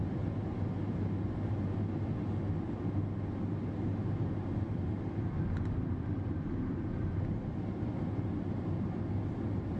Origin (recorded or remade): recorded